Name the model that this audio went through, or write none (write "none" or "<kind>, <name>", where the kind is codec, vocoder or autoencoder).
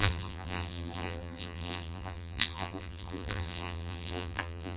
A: vocoder, BigVGAN v2